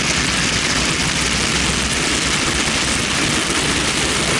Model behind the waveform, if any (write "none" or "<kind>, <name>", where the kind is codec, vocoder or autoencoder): none